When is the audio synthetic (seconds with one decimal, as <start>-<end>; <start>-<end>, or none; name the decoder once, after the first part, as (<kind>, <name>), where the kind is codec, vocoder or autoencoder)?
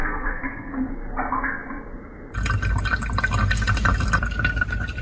0.0-0.9 (codec, SNAC)